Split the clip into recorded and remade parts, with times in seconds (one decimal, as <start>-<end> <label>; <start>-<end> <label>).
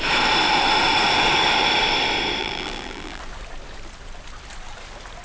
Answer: 0.0-2.4 recorded; 2.4-3.2 remade; 3.2-5.2 recorded